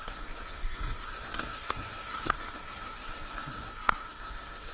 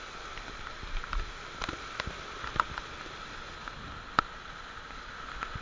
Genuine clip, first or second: second